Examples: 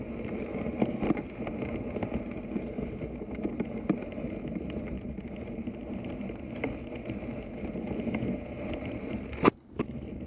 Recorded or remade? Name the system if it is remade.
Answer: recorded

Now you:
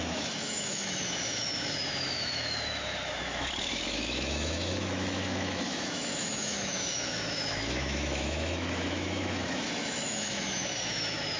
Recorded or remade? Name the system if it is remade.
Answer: remade, autoencoder, DAC-VAE